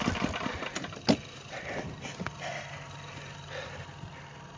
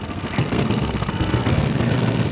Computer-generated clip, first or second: second